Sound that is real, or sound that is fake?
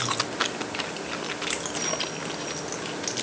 real